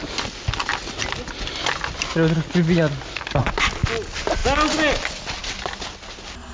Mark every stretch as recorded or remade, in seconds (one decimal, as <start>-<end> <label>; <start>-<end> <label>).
0.0-6.5 recorded